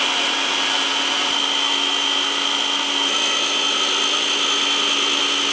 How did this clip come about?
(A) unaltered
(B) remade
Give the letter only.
A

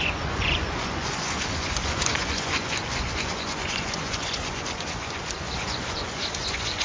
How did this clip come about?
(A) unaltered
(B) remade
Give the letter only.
B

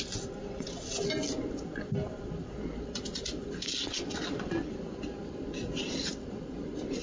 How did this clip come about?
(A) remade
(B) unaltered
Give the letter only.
B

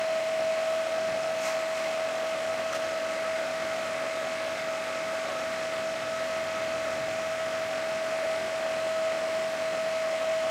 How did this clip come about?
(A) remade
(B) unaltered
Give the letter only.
A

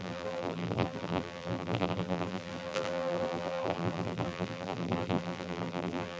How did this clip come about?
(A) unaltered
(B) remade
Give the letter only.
B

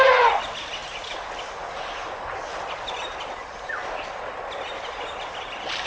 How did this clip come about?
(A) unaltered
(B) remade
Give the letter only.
A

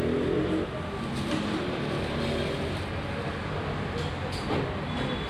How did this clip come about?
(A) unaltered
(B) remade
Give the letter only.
A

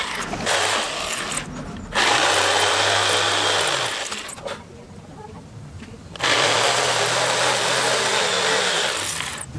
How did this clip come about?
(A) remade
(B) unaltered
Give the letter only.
B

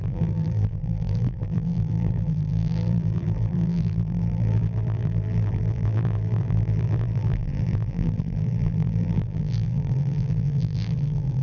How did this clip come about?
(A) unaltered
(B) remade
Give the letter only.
B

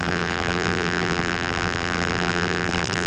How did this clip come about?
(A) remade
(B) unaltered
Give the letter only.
A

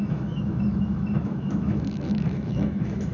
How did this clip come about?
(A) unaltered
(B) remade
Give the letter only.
B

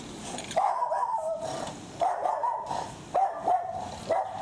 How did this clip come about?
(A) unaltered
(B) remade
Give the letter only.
B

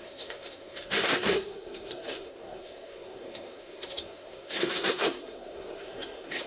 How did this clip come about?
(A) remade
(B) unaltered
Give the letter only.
A